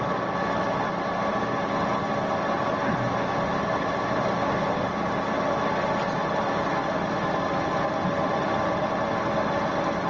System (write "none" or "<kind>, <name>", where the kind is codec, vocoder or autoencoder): none